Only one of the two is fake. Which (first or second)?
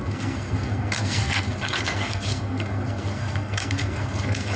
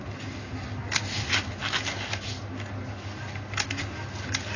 first